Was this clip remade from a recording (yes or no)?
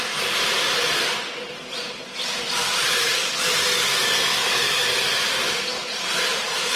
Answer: yes